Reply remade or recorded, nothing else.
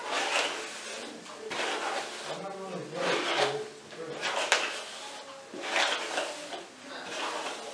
recorded